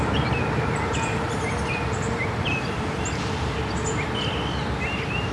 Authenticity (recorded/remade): recorded